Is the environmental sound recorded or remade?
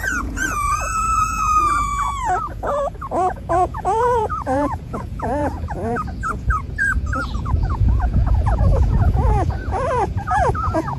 remade